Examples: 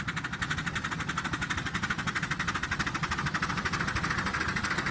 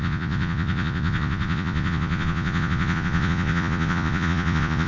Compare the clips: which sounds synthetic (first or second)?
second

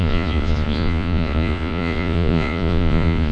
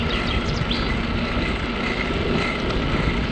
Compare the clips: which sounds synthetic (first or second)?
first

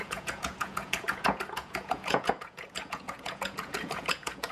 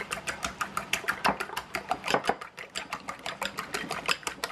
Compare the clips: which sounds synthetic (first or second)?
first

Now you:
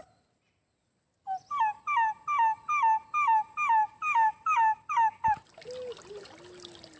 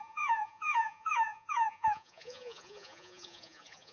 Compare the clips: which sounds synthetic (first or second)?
second